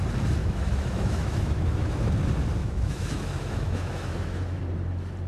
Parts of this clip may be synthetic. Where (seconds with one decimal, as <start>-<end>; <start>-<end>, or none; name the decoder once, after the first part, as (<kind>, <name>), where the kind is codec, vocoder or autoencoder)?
0.4-2.1 (autoencoder, DAC-VAE); 2.6-4.6